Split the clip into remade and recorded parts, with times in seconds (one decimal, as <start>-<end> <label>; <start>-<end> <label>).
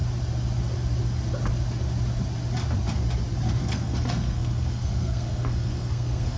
0.0-3.6 recorded; 3.6-6.4 remade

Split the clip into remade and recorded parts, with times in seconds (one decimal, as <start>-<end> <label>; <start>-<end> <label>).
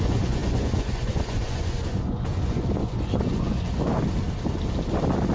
0.0-4.0 remade; 4.0-5.3 recorded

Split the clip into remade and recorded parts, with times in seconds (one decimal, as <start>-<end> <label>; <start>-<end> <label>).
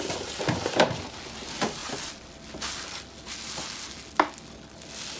0.0-5.2 recorded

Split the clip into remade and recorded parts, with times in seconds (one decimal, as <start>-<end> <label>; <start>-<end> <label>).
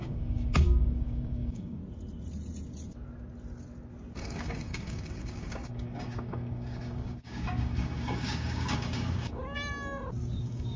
0.0-1.8 remade; 1.8-4.2 recorded; 4.2-9.4 remade; 9.4-10.4 recorded; 10.4-10.8 remade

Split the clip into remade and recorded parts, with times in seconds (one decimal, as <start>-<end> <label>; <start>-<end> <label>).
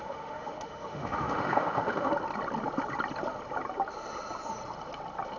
0.0-2.1 remade; 2.1-5.4 recorded